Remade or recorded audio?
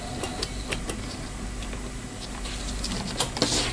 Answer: recorded